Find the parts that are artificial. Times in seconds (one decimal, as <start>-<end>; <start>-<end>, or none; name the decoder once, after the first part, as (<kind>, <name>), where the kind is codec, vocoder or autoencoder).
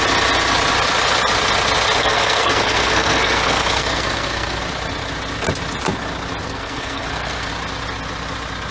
2.0-4.6 (codec, SNAC); 6.4-7.5